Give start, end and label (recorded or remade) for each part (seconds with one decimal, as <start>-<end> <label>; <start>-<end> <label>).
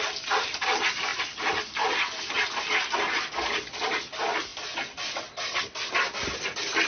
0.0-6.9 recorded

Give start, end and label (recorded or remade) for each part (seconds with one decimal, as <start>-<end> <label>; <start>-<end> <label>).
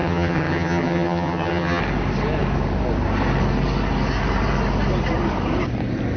0.0-1.8 remade; 1.8-6.2 recorded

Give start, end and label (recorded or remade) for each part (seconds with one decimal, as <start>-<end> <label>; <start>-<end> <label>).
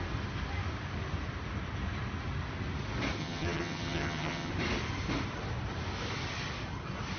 0.0-3.2 recorded; 3.2-4.5 remade; 4.5-7.2 recorded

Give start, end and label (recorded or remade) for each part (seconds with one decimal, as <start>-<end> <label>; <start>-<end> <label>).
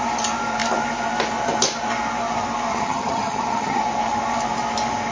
0.0-2.7 recorded; 2.7-3.8 remade; 3.8-5.1 recorded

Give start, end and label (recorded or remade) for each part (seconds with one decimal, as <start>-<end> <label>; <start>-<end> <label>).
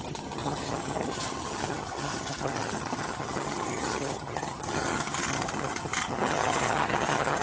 0.0-7.4 remade